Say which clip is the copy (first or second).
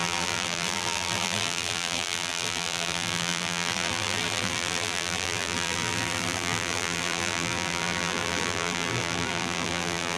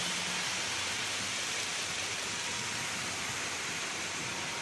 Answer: first